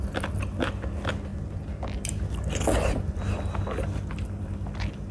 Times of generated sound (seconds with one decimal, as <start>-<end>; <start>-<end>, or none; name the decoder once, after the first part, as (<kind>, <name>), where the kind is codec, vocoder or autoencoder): none